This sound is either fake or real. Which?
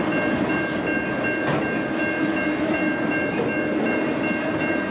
real